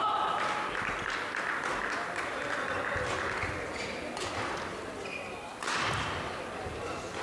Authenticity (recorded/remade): recorded